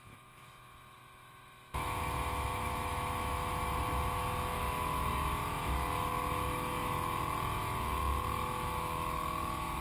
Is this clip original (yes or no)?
no